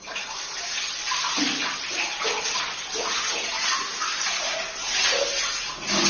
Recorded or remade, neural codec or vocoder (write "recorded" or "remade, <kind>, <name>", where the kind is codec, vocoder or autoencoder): recorded